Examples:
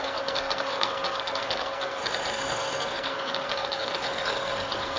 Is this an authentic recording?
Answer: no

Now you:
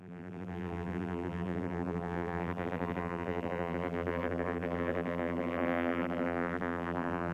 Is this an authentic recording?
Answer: no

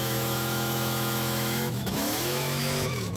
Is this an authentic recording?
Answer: no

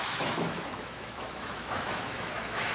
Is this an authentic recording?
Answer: no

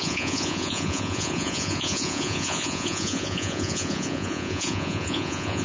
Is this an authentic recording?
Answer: no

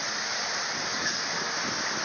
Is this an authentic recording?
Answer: yes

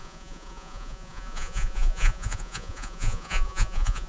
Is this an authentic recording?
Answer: no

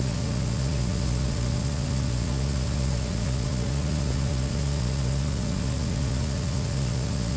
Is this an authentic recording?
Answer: no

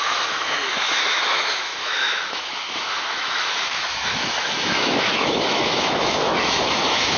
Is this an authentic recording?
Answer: no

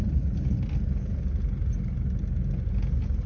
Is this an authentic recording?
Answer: yes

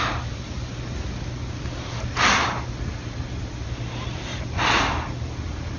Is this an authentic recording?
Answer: yes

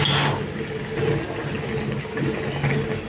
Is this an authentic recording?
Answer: yes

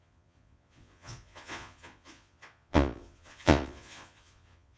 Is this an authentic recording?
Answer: no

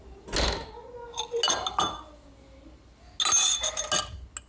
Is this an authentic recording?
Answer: yes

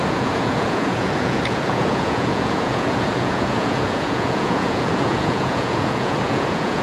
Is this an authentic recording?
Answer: no